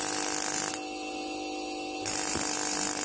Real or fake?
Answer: real